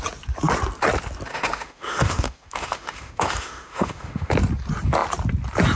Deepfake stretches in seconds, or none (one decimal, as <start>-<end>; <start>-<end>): 1.3-4.3